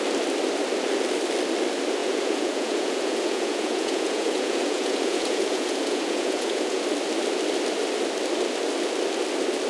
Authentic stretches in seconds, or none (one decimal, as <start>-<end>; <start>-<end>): 0.0-2.0; 6.8-9.7